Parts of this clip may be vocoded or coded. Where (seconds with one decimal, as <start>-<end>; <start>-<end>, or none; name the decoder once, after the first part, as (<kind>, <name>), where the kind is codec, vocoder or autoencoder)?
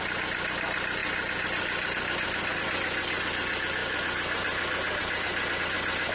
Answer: none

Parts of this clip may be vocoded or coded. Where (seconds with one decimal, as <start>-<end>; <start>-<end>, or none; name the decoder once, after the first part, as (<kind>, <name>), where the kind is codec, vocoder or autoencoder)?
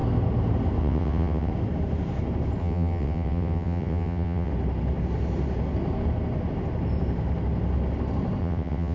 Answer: 0.8-1.5 (vocoder, WaveNeXt); 2.6-4.5; 8.4-8.9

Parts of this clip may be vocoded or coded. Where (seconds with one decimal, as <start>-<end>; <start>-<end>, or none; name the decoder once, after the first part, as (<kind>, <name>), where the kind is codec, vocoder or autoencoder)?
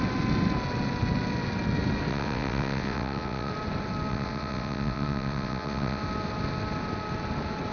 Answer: 2.1-3.5 (vocoder, WaveNeXt); 4.1-6.0